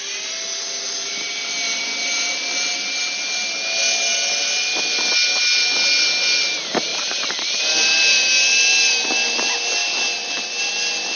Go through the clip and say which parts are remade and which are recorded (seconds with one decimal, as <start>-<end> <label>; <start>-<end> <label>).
0.0-1.0 recorded; 1.0-3.0 remade; 3.0-6.9 recorded; 6.9-7.6 remade; 7.6-11.2 recorded